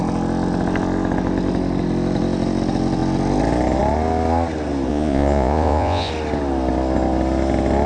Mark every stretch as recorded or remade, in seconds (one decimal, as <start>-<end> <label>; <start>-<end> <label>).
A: 0.0-4.9 recorded; 4.9-6.1 remade; 6.1-7.9 recorded